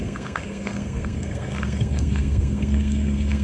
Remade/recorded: remade